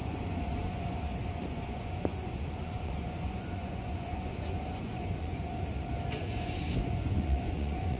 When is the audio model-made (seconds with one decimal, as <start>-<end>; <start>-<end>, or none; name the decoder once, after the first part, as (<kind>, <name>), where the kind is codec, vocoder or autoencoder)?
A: 0.0-5.5 (vocoder, Vocos); 6.1-8.0